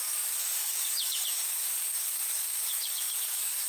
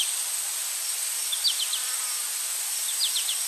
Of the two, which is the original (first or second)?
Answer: second